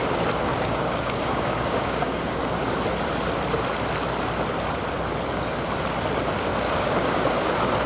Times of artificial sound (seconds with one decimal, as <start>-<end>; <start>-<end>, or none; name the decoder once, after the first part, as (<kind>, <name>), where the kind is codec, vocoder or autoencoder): 0.5-2.4 (codec, DAC); 6.5-7.5